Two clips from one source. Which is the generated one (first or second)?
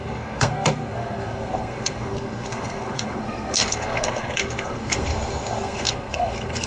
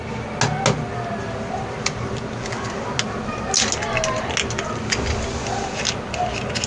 first